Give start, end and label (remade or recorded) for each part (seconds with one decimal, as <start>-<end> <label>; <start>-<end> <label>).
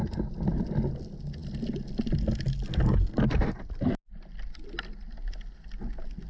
0.0-6.3 recorded